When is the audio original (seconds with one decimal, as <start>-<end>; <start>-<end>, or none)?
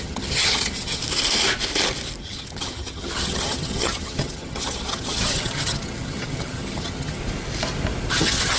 1.0-2.2; 7.2-8.1